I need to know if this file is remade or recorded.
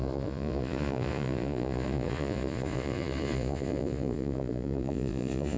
remade